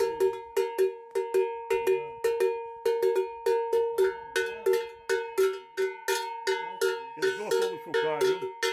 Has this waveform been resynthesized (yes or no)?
no